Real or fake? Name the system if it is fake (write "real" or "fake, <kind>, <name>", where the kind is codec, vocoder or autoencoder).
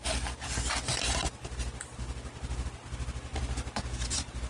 real